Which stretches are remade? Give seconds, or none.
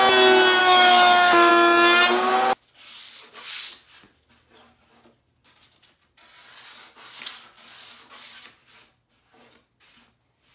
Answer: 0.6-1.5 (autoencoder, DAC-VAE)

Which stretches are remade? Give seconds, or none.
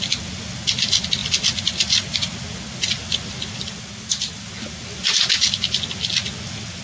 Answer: none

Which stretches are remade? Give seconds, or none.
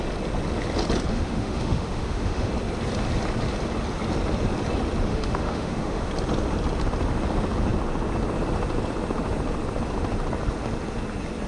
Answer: 1.1-2.5 (autoencoder, DAC-VAE); 5.1-6.1